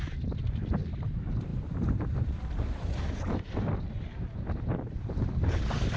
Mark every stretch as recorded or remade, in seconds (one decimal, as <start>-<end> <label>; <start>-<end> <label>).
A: 0.0-6.0 remade